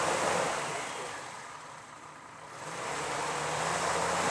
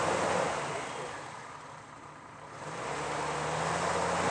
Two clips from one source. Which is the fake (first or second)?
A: first